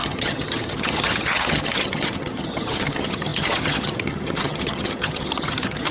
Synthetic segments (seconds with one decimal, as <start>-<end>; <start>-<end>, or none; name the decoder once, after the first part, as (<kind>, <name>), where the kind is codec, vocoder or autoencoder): 0.0-5.9 (vocoder, HiFi-GAN)